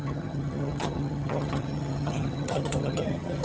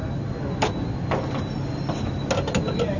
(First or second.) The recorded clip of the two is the second